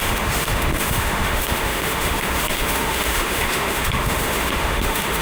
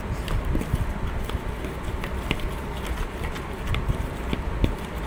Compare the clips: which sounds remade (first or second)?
first